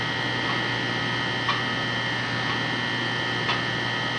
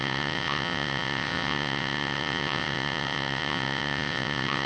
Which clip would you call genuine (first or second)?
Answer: first